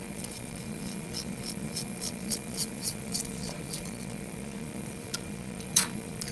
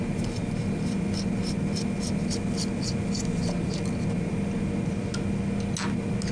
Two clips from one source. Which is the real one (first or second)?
second